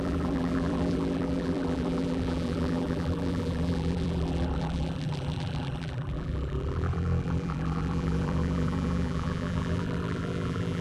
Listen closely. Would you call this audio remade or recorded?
remade